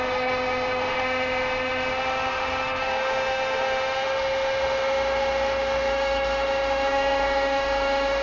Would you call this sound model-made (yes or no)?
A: yes